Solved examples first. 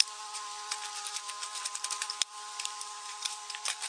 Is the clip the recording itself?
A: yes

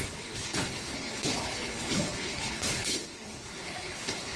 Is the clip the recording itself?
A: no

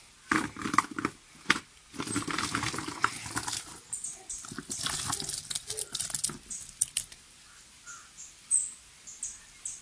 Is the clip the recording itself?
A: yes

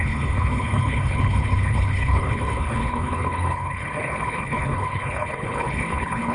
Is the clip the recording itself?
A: no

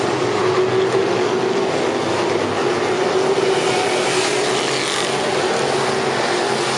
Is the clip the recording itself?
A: yes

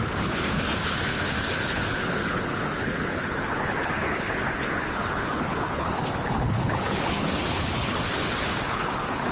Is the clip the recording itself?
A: no